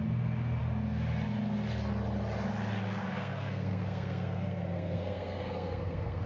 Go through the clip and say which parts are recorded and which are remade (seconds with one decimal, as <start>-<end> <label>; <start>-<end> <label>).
0.0-3.0 recorded; 3.0-6.3 remade